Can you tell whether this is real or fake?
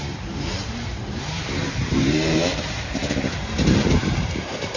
fake